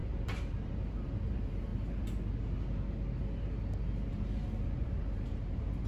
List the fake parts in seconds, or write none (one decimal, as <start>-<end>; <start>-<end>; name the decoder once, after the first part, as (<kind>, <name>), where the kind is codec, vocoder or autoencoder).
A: 0.0-1.7 (vocoder, BigVGAN v2); 4.1-5.9